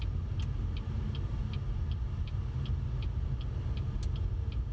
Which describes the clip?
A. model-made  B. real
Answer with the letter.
B